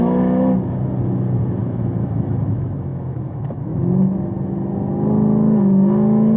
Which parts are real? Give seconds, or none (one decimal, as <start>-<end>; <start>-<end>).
0.0-1.6; 3.8-6.4